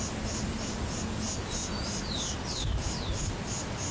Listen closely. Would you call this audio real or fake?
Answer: real